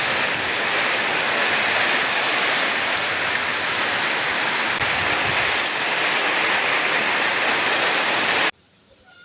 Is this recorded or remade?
recorded